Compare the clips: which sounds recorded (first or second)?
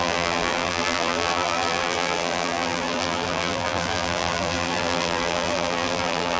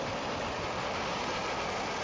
second